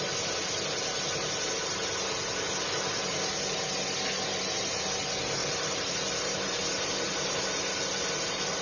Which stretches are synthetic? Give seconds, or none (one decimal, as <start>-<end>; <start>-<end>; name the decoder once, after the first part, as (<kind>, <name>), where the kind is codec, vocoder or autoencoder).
none